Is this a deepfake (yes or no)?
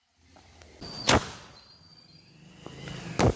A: no